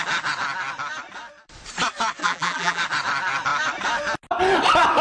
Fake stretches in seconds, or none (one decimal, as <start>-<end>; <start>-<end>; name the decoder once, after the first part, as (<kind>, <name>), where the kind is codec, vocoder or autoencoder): 2.2-2.8 (vocoder, BigVGAN v2)